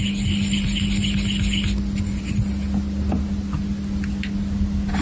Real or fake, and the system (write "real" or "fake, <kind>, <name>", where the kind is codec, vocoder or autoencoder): real